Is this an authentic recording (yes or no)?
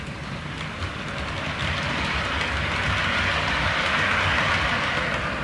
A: yes